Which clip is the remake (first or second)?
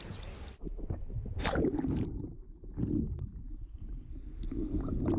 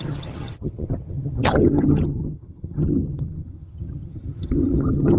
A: second